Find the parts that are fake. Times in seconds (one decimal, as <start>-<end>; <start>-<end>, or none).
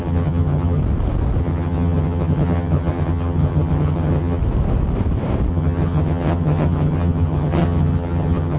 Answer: 0.0-0.8; 1.4-4.4; 5.5-8.6